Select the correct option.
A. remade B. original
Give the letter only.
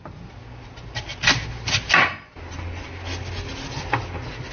B